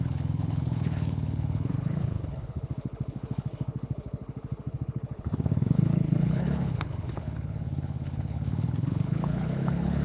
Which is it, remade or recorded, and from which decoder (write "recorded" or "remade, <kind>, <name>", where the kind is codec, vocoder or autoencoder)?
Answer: remade, codec, HILCodec